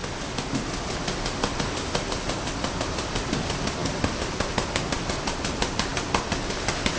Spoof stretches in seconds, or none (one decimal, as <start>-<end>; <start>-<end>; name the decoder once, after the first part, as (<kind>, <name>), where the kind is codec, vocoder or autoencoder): none